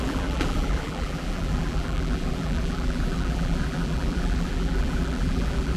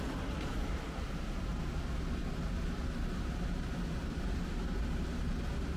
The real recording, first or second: second